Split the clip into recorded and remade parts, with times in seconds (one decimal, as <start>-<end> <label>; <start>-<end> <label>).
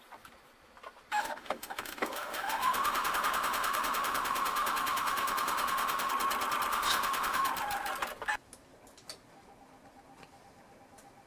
0.0-1.1 recorded; 1.1-6.1 remade; 6.1-6.7 recorded; 6.7-7.5 remade; 7.5-11.3 recorded